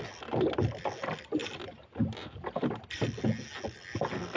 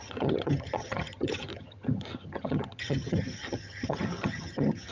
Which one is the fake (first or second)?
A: second